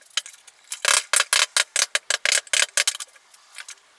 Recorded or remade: recorded